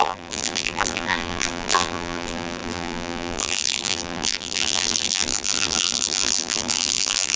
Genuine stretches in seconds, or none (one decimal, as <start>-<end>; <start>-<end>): none